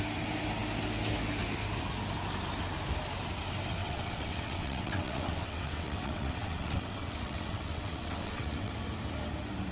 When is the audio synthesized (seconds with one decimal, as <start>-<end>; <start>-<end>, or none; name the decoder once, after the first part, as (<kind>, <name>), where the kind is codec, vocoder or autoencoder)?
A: 3.8-8.7 (vocoder, WaveNeXt)